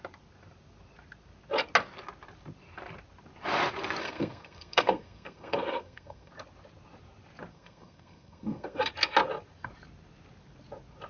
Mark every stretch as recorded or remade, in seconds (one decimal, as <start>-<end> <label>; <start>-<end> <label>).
0.0-4.0 recorded; 4.0-6.3 remade; 6.3-7.5 recorded; 7.5-8.9 remade; 8.9-11.1 recorded